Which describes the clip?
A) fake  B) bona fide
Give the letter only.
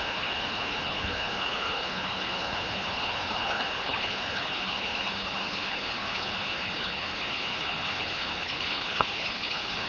A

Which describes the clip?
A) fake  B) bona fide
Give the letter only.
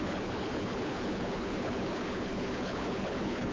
A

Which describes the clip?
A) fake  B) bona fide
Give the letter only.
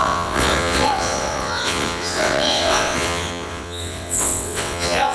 A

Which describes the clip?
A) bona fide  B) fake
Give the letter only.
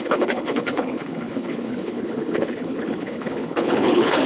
B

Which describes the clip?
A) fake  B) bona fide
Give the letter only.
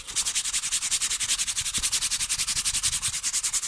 B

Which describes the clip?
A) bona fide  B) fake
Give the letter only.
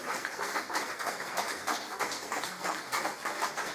B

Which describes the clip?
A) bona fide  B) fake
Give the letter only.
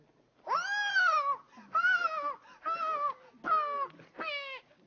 A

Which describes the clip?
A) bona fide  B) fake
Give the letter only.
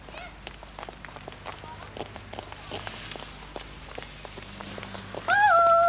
A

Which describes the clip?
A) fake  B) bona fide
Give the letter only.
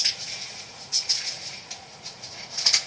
A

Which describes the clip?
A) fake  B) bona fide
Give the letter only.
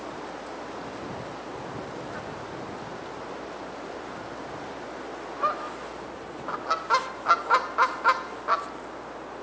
B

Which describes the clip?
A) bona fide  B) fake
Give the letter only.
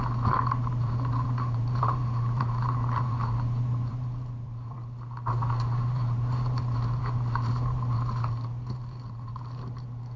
B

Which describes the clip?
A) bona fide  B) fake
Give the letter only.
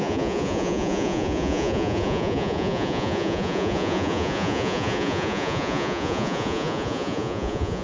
B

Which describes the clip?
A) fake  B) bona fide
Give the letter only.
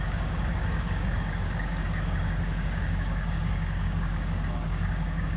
A